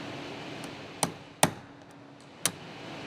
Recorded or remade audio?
recorded